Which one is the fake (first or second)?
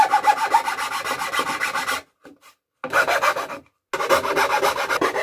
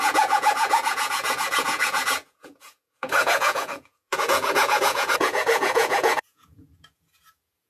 second